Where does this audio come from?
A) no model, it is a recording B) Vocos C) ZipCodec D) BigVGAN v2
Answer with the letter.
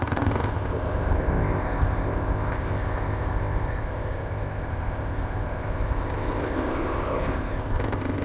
C